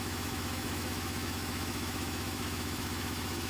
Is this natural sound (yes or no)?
no